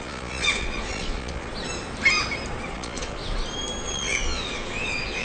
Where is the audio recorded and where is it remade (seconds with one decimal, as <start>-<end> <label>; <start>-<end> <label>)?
0.0-1.5 remade; 1.5-2.7 recorded; 2.7-3.2 remade; 3.2-3.8 recorded; 3.8-5.2 remade